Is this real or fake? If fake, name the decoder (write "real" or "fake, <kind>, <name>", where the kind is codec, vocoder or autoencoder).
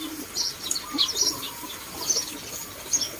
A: real